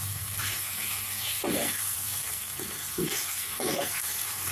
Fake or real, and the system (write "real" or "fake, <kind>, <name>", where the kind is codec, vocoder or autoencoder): fake, codec, SNAC